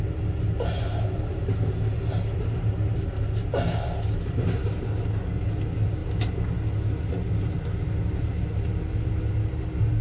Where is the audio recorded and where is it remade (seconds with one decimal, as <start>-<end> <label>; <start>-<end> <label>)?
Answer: 0.0-10.0 recorded